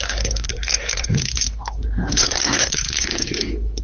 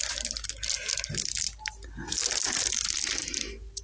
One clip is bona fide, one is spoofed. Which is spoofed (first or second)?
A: first